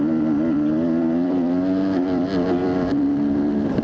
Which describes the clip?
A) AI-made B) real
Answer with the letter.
A